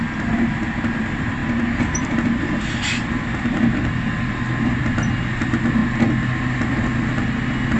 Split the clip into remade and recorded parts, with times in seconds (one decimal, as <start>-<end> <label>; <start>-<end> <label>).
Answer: 0.0-7.8 recorded